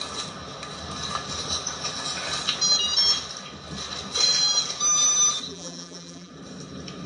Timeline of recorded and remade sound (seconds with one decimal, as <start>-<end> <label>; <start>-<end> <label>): 0.0-5.5 recorded; 5.5-6.3 remade; 6.3-7.1 recorded